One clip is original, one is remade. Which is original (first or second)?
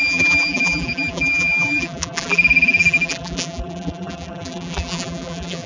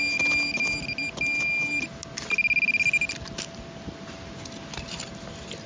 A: second